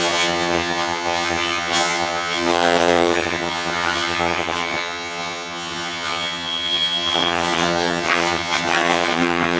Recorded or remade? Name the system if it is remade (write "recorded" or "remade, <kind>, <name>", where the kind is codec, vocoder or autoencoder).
remade, vocoder, HiFi-GAN